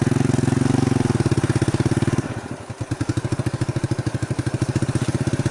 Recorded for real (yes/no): yes